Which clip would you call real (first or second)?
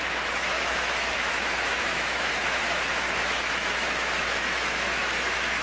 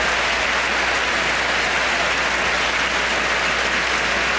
second